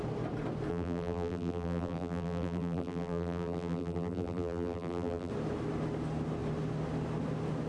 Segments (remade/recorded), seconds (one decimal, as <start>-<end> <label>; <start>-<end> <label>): 0.0-0.7 recorded; 0.7-5.3 remade; 5.3-7.7 recorded